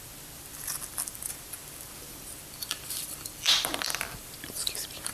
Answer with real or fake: fake